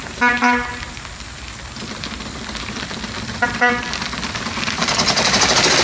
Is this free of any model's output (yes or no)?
yes